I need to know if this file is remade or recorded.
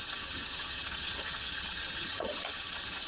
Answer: remade